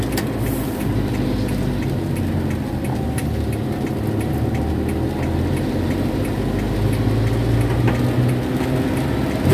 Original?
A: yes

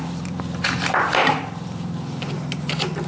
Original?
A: no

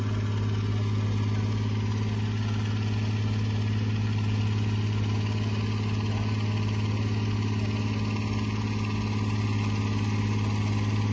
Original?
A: yes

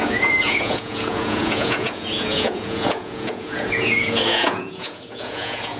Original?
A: no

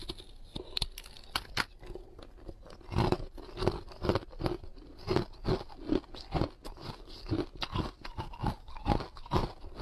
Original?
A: yes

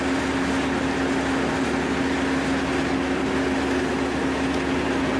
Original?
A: yes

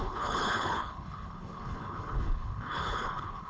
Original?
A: no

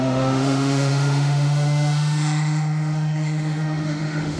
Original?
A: no